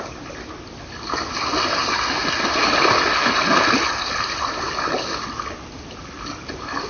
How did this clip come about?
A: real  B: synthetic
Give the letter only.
A